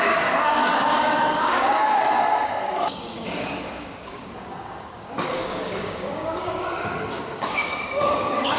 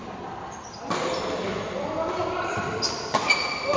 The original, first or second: second